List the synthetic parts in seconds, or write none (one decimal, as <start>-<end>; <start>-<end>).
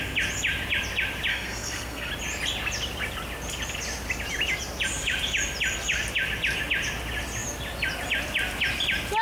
1.3-2.1